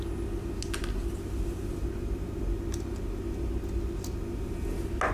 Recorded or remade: recorded